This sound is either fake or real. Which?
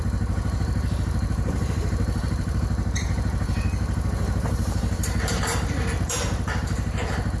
fake